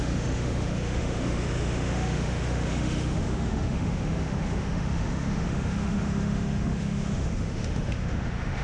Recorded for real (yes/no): no